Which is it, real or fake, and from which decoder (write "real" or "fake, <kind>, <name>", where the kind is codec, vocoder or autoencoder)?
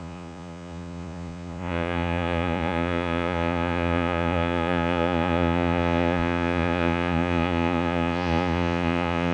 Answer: fake, vocoder, Vocos